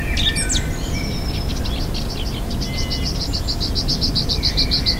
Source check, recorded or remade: recorded